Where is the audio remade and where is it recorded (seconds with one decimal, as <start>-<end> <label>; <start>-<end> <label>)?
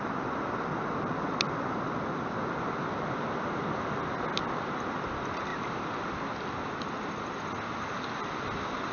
0.0-8.9 recorded